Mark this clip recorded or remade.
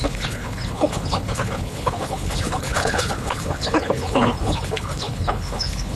remade